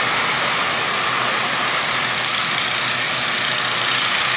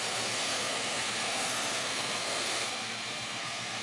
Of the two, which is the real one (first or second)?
first